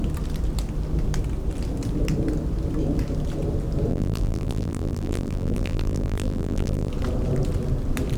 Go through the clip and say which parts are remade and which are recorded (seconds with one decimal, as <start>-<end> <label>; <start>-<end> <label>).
0.0-3.9 recorded; 3.9-6.9 remade; 6.9-8.2 recorded